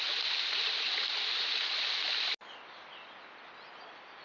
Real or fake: real